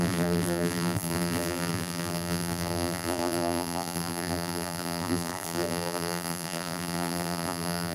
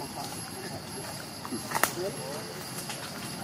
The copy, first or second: first